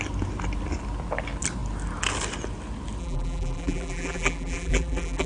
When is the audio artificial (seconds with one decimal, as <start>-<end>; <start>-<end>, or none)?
3.0-5.3